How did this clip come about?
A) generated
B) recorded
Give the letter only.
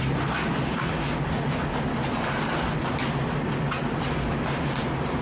B